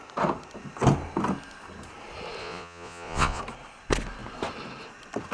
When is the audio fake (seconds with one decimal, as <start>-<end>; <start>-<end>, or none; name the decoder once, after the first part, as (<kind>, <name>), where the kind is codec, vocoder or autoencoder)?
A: 2.4-3.4 (vocoder, Vocos)